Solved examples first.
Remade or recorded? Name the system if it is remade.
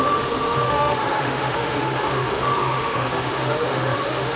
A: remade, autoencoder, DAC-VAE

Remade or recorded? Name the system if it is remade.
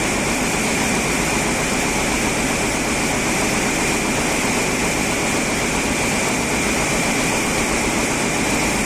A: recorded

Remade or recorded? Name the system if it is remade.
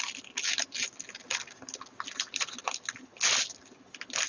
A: recorded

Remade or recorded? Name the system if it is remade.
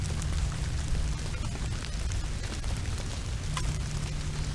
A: recorded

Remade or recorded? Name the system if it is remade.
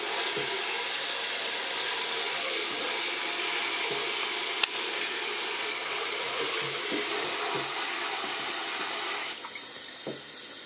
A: recorded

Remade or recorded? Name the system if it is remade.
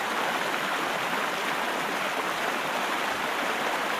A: recorded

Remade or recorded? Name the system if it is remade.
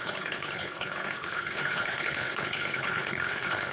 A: remade, codec, HILCodec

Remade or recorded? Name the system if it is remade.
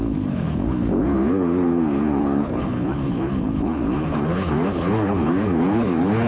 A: remade, codec, HILCodec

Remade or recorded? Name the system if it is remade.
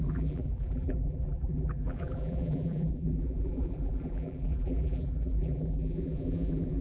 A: remade, vocoder, BigVGAN v2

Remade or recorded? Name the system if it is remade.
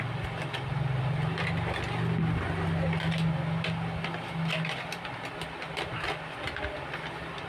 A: recorded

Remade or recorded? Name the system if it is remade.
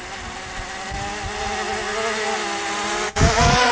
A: recorded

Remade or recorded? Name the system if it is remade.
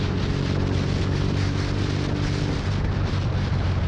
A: recorded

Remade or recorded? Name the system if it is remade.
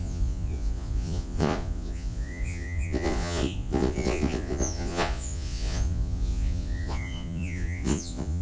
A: remade, vocoder, Vocos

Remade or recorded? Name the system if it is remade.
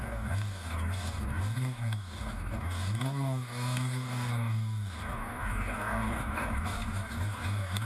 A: remade, codec, DAC